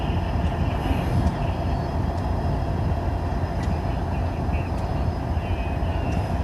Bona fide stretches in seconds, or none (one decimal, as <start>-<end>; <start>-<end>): 0.0-4.9